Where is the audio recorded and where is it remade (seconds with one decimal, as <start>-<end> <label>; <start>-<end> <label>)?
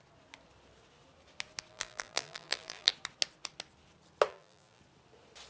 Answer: 0.0-1.7 recorded; 1.7-2.9 remade; 2.9-4.3 recorded; 4.3-4.8 remade; 4.8-5.5 recorded